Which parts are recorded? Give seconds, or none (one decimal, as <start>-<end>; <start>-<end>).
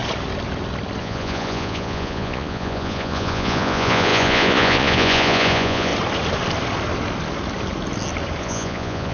0.0-1.0; 5.9-8.4